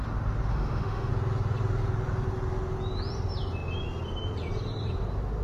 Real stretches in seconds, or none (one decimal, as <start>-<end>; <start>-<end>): 0.0-0.5; 1.1-5.4